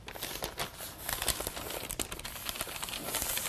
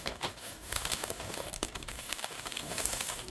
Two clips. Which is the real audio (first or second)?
first